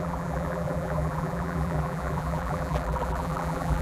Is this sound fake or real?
fake